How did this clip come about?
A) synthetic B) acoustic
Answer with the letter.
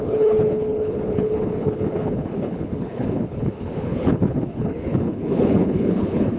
A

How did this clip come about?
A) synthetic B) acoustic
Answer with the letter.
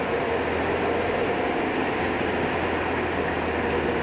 B